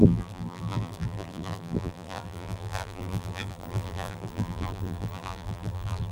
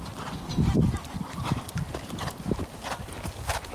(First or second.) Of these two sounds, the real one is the second